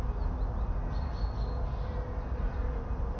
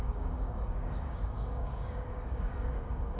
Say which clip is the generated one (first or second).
second